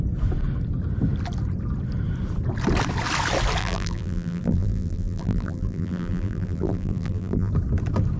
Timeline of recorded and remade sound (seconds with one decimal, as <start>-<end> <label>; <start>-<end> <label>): 0.0-3.6 recorded; 3.6-7.5 remade; 7.5-8.2 recorded